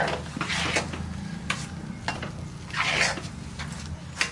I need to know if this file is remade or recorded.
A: recorded